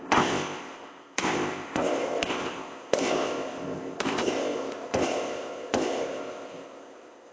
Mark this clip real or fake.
fake